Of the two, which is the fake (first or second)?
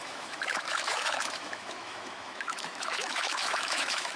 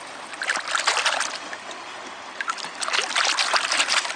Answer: first